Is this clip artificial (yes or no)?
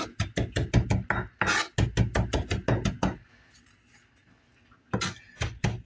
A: no